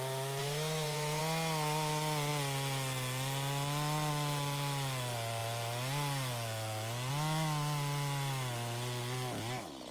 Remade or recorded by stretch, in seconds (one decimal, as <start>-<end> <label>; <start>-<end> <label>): 0.0-0.4 recorded; 0.4-1.2 remade; 1.2-9.9 recorded